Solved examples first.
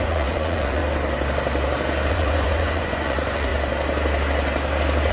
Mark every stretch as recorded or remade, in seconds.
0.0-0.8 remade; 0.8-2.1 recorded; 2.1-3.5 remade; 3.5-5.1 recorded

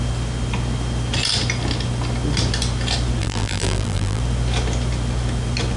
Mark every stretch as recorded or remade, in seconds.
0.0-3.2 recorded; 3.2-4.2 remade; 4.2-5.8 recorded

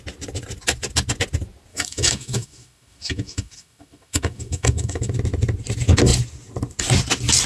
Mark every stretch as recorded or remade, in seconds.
0.0-1.7 recorded; 1.7-5.1 remade; 5.1-7.5 recorded

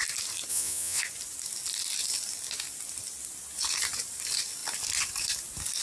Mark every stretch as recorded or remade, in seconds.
0.0-0.5 recorded; 0.5-1.0 remade; 1.0-5.8 recorded